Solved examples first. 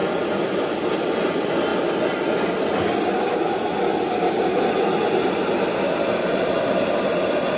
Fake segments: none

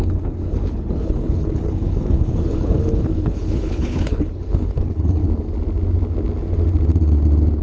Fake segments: 0.0-5.2 (codec, HILCodec)